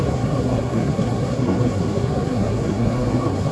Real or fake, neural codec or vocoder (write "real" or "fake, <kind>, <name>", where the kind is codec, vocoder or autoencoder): fake, codec, SNAC